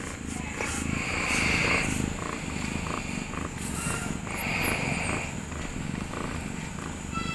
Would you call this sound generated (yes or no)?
no